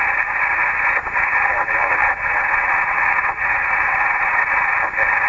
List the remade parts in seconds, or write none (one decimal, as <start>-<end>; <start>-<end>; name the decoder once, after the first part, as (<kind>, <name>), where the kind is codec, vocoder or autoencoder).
1.5-4.7 (vocoder, WaveNeXt)